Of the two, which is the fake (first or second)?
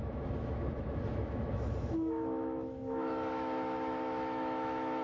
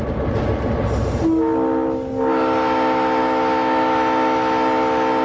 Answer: first